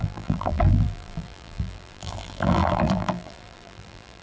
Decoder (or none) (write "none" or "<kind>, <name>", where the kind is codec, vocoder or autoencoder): vocoder, BigVGAN v2